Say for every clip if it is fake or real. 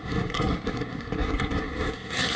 fake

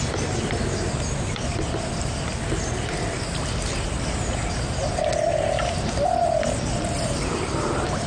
real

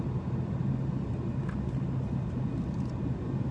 real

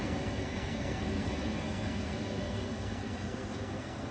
fake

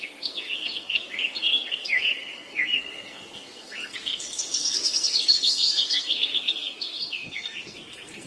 fake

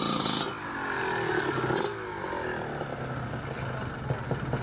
real